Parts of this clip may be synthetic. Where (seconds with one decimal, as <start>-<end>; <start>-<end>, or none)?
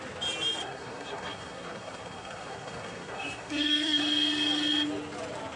0.6-4.0